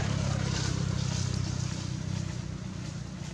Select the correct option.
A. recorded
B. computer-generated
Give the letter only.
A